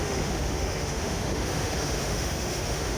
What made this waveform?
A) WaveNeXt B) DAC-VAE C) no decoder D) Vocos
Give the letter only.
B